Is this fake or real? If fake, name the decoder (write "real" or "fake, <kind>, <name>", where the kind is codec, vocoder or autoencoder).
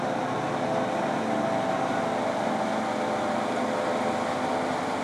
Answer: real